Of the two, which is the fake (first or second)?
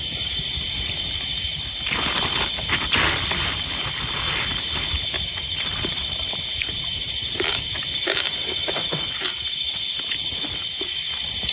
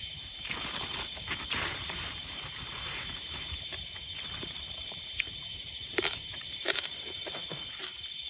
second